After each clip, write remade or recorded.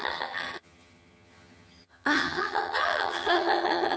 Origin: remade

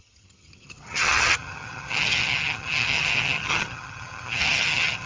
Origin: remade